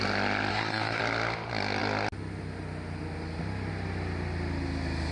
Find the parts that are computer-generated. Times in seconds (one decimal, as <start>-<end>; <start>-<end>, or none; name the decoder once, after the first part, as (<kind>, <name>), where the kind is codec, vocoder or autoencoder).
0.5-1.0 (codec, SNAC)

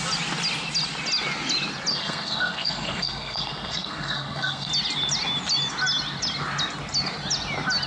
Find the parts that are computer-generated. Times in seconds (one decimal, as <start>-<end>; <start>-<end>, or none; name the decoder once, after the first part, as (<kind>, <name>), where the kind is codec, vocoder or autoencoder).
1.9-4.7 (codec, SNAC)

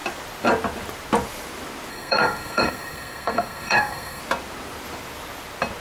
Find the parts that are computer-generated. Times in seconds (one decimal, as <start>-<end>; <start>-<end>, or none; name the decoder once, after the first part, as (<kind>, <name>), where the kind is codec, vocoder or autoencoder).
1.9-4.2 (codec, SNAC)

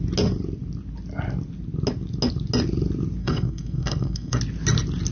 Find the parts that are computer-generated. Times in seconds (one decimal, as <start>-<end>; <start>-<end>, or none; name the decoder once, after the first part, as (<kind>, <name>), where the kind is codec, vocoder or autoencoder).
3.2-4.4 (codec, SNAC)

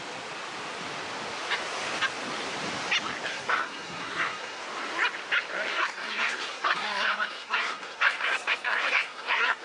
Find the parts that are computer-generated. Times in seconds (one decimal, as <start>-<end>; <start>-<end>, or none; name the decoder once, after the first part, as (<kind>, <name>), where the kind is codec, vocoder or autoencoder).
3.3-4.6 (codec, SNAC); 5.7-9.6

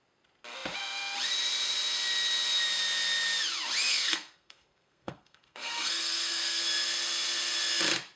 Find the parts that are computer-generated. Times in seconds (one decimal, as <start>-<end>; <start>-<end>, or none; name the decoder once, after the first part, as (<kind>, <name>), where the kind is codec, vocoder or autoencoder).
3.9-6.6 (codec, SNAC)